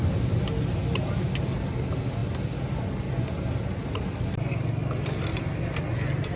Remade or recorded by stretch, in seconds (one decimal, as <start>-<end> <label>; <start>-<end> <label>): 0.0-6.4 recorded